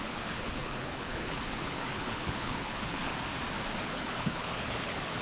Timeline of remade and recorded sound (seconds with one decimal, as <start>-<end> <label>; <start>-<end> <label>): 0.0-3.1 remade; 3.1-3.8 recorded; 3.8-5.2 remade